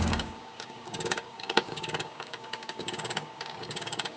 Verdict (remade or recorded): remade